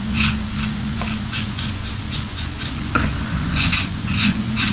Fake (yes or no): yes